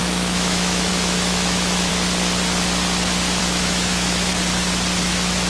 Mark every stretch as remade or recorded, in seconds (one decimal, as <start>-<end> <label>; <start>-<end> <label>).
0.0-1.9 remade; 1.9-3.4 recorded; 3.4-4.3 remade; 4.3-5.0 recorded; 5.0-5.5 remade